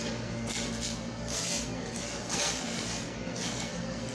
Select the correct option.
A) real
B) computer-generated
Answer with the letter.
B